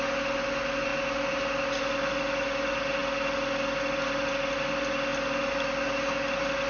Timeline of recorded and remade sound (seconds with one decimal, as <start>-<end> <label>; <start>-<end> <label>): 0.0-6.7 recorded